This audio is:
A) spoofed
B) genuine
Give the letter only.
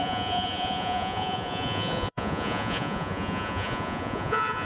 A